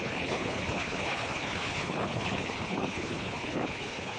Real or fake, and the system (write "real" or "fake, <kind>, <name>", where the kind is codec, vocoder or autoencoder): fake, codec, HILCodec